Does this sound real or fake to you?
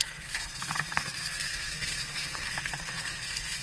fake